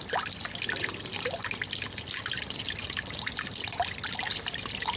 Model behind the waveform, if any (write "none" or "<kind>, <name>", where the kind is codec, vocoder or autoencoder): none